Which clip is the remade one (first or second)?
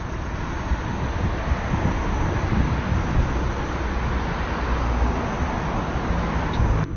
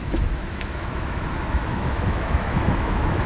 second